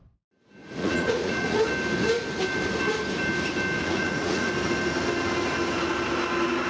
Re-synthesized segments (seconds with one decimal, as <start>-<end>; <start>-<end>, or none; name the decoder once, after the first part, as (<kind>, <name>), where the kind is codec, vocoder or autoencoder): 0.6-1.7 (vocoder, Vocos); 3.8-4.5